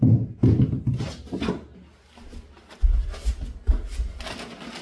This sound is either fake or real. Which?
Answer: real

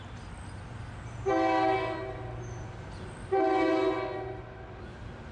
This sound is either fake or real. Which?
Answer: real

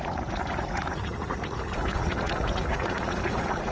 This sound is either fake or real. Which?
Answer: fake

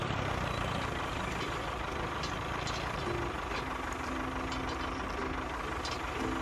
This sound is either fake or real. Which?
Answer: real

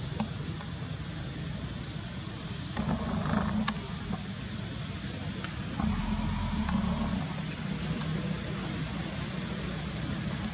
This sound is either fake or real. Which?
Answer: real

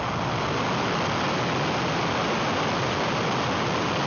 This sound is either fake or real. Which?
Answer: real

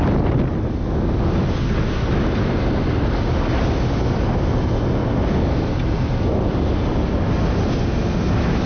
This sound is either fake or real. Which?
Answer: real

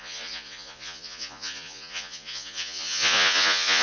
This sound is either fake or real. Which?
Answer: fake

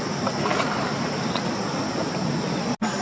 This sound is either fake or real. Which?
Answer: real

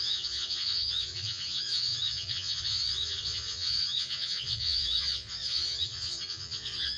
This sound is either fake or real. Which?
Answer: fake